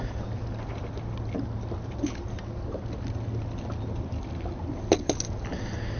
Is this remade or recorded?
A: recorded